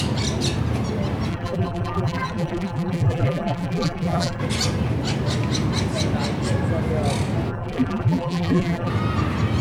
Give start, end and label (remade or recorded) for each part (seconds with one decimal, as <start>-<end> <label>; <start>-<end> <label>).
0.0-1.3 recorded; 1.3-4.4 remade; 4.4-7.5 recorded; 7.5-8.9 remade; 8.9-9.6 recorded